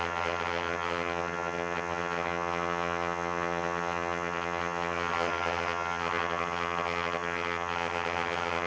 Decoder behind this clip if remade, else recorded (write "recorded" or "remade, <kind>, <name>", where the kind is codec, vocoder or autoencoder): remade, vocoder, HiFi-GAN